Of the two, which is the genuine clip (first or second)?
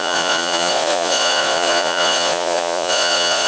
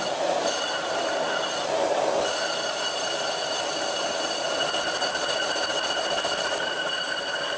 second